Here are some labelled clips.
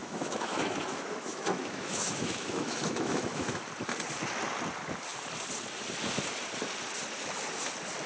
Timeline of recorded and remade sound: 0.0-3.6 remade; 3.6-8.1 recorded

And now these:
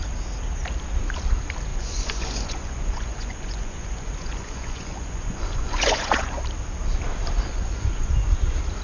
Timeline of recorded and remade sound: 0.0-1.7 recorded; 1.7-6.4 remade; 6.4-7.5 recorded; 7.5-8.3 remade; 8.3-8.8 recorded